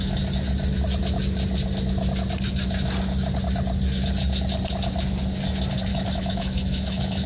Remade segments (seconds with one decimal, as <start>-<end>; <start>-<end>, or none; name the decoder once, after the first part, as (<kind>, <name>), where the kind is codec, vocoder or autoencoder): 5.9-7.3 (autoencoder, DAC-VAE)